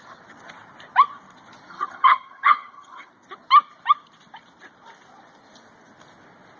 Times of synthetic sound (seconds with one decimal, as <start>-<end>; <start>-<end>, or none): 1.7-3.1